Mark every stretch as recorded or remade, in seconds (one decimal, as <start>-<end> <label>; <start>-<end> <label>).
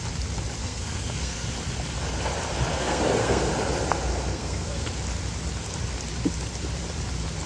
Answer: 0.0-0.6 recorded; 0.6-1.5 remade; 1.5-2.7 recorded; 2.7-3.5 remade; 3.5-4.1 recorded; 4.1-4.9 remade; 4.9-7.5 recorded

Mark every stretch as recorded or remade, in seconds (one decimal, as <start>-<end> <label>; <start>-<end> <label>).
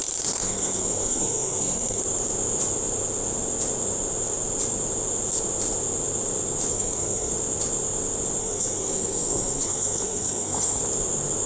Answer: 0.0-0.4 recorded; 0.4-2.0 remade; 2.0-6.7 recorded; 6.7-7.3 remade; 7.3-8.4 recorded; 8.4-10.8 remade; 10.8-11.5 recorded